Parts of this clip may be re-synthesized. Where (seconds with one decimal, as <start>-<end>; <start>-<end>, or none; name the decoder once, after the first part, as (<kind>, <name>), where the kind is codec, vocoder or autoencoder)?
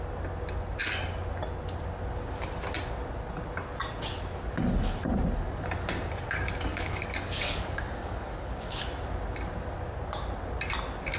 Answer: 6.7-8.8 (codec, DAC)